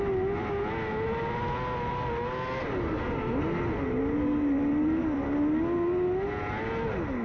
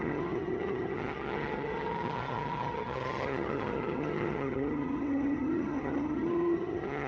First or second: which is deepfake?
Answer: second